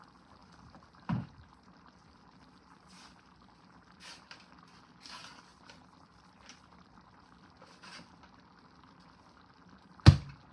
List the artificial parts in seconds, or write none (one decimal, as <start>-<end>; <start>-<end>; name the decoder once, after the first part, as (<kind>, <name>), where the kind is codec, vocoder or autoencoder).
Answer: 0.4-2.5 (vocoder, BigVGAN v2); 5.5-7.1